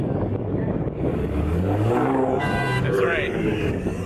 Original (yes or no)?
no